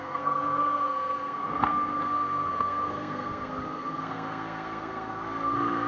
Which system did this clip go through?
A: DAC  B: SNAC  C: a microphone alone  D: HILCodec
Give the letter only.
B